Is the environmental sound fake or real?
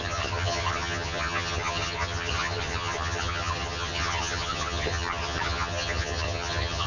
fake